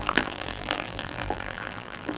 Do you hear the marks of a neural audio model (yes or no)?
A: yes